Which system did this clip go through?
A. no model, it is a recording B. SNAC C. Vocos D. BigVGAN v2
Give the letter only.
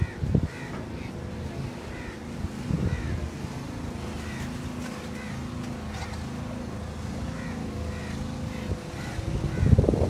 A